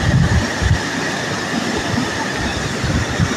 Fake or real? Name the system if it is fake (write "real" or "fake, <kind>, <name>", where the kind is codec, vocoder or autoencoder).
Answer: real